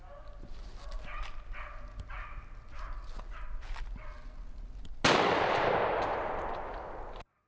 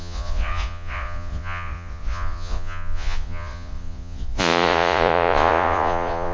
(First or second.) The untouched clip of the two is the first